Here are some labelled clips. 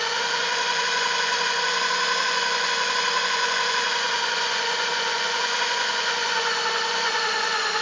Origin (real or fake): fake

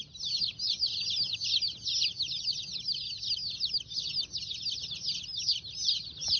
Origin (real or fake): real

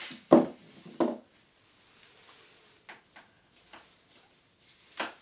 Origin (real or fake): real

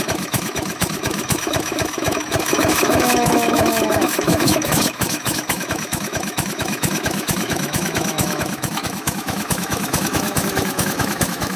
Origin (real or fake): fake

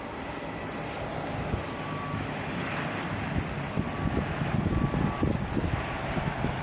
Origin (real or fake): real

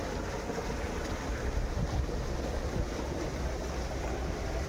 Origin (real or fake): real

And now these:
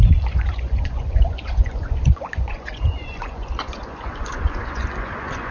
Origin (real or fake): fake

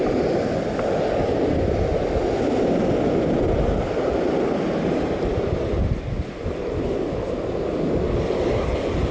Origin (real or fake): real